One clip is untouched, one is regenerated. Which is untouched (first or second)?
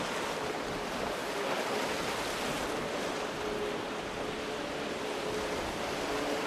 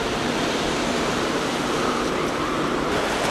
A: first